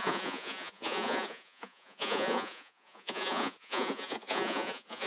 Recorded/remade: remade